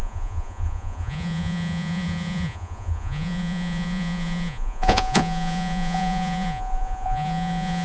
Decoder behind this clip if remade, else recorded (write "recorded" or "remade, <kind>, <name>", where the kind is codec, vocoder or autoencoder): remade, vocoder, Vocos